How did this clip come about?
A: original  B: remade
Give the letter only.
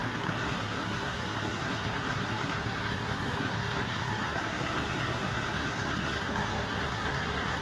B